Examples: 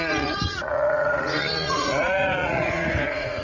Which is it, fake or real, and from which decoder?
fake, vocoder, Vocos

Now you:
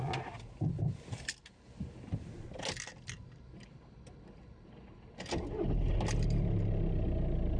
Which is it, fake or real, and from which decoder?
real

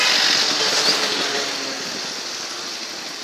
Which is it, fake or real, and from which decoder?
real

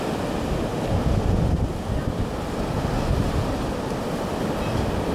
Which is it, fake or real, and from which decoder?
real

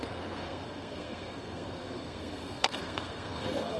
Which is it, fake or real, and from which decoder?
fake, codec, SNAC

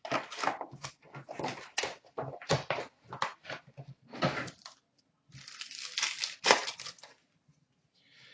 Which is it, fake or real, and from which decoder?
real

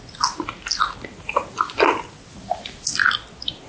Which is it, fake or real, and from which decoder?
real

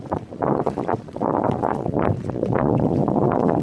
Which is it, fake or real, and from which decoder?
fake, vocoder, Vocos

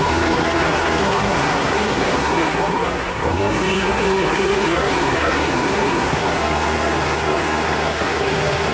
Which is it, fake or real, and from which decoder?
fake, codec, SNAC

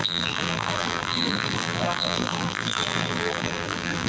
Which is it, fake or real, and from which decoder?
fake, vocoder, BigVGAN v2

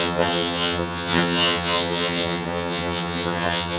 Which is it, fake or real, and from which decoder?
fake, vocoder, HiFi-GAN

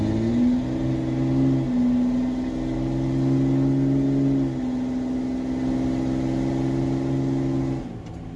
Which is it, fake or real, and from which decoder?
real